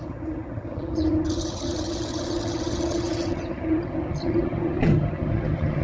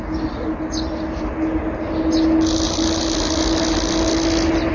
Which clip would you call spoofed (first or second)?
first